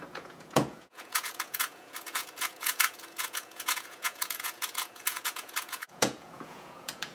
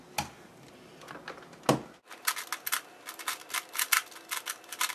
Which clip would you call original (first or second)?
second